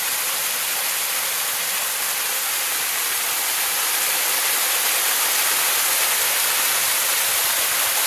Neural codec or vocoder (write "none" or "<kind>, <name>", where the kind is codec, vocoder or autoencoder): none